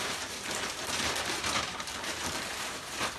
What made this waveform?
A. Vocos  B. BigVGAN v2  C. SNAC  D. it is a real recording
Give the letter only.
B